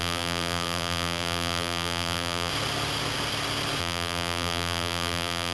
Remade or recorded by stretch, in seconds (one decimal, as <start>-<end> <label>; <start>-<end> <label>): 0.0-2.5 remade; 2.5-3.8 recorded; 3.8-5.5 remade

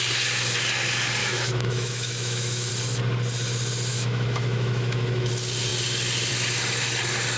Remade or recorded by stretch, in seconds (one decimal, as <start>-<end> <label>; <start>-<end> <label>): 0.0-1.2 recorded; 1.2-2.7 remade; 2.7-3.9 recorded; 3.9-5.3 remade; 5.3-7.4 recorded

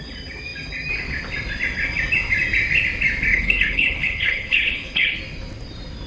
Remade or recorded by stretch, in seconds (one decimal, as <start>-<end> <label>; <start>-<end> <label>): 0.0-3.3 recorded; 3.3-5.2 remade; 5.2-6.1 recorded

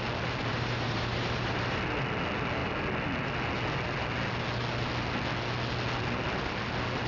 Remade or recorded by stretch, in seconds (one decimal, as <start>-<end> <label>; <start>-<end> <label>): 0.0-0.5 recorded; 0.5-1.8 remade; 1.8-7.1 recorded

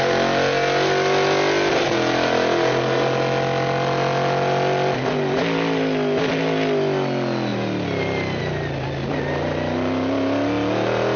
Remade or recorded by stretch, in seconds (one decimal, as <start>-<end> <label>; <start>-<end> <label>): 0.0-11.2 recorded